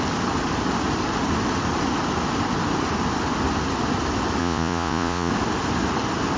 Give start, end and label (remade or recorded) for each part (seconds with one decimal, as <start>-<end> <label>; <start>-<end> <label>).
0.0-4.4 recorded; 4.4-5.3 remade; 5.3-6.4 recorded